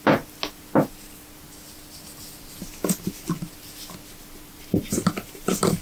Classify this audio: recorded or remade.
recorded